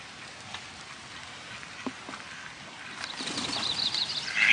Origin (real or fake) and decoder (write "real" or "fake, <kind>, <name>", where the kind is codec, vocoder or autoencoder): real